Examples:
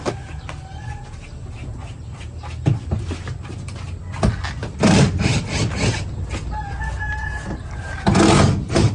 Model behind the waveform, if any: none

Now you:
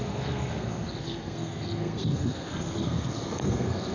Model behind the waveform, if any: codec, SNAC